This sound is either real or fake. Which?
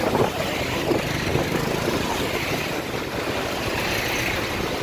real